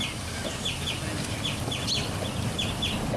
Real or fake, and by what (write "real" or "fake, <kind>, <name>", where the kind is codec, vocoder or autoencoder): real